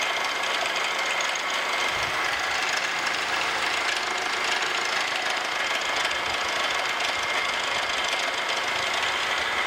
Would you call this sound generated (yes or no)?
no